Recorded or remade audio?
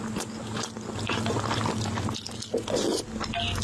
recorded